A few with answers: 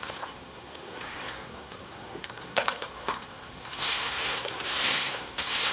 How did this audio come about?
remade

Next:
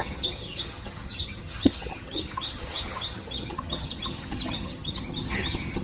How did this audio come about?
remade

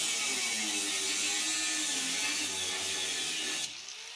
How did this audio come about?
recorded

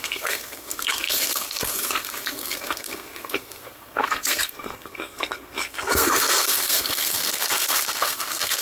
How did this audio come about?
remade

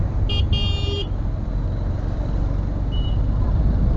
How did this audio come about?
recorded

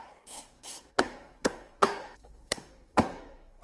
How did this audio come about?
remade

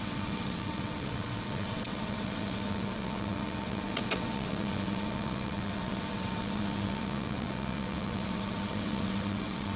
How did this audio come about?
remade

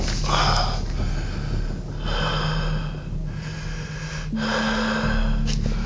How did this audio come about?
recorded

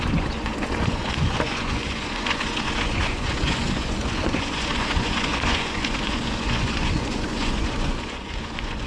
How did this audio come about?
remade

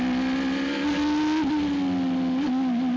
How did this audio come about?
recorded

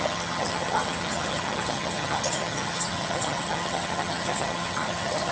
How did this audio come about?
remade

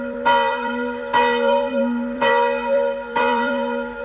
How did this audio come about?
remade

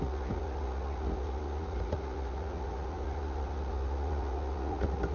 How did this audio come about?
remade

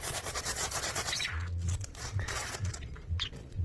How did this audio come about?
remade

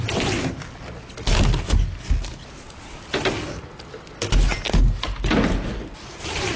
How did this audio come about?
recorded